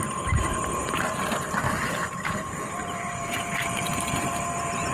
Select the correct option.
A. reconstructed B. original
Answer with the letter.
A